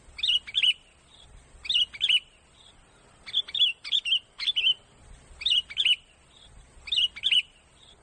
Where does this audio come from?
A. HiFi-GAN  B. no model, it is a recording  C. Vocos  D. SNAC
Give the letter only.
B